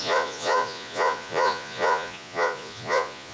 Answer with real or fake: fake